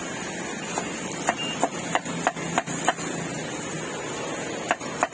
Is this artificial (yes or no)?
no